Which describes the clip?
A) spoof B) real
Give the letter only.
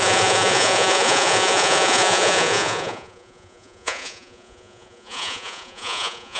A